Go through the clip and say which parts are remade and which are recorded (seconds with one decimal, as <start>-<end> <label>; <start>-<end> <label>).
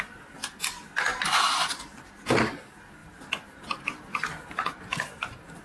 0.0-5.6 recorded